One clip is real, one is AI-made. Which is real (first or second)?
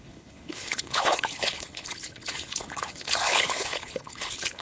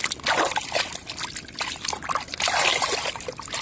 second